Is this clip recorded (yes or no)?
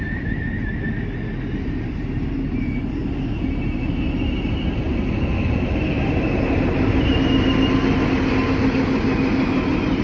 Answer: yes